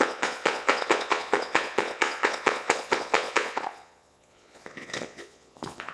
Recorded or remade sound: remade